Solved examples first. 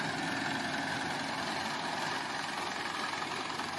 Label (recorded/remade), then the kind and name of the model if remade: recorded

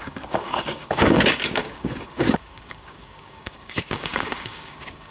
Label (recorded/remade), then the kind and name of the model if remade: remade, codec, DAC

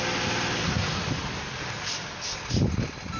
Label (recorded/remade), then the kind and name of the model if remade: recorded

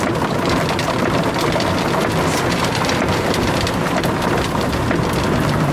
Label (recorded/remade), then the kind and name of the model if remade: remade, vocoder, BigVGAN v2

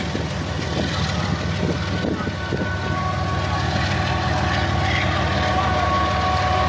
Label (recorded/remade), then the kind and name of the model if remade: recorded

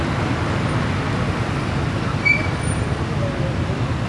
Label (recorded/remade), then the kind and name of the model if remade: recorded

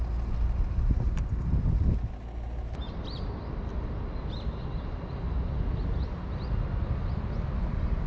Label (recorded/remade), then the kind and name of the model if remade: recorded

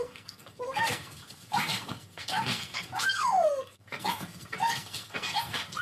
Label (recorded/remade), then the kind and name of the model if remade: remade, codec, SNAC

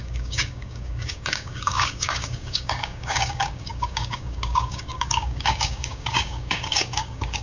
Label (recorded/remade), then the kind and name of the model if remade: remade, codec, DAC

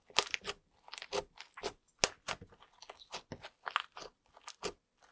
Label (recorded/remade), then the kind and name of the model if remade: recorded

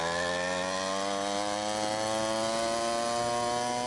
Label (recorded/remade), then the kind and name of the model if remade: recorded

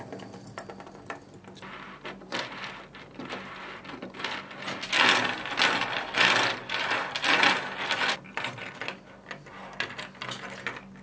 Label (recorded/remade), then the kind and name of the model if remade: recorded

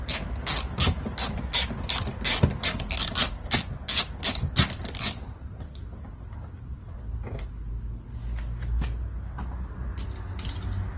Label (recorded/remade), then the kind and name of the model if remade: recorded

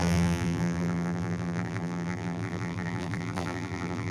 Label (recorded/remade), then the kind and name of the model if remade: remade, vocoder, BigVGAN v2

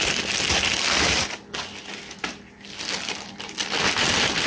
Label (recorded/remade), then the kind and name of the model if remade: recorded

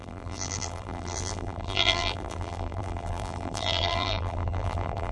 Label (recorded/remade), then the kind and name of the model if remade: remade, vocoder, BigVGAN v2